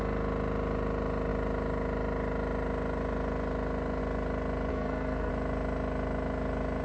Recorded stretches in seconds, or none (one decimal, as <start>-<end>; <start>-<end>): 0.0-4.7; 5.3-6.8